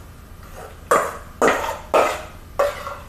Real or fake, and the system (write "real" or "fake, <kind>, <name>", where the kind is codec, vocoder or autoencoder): real